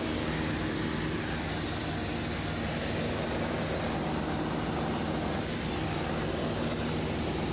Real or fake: real